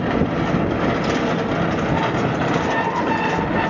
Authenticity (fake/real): real